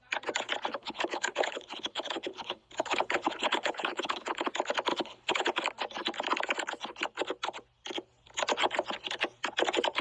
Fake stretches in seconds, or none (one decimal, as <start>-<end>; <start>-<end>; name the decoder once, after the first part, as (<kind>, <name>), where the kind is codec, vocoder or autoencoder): 0.7-4.5 (codec, HILCodec); 4.9-5.6